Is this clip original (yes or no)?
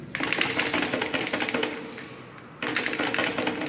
yes